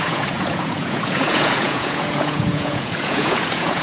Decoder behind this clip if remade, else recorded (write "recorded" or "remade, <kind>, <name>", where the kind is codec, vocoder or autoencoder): remade, vocoder, Vocos